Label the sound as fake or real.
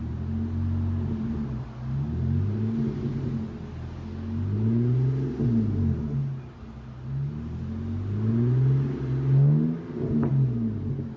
real